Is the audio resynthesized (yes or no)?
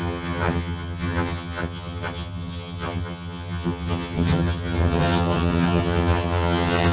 yes